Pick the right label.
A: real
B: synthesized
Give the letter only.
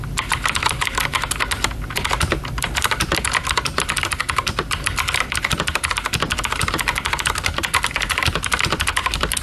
B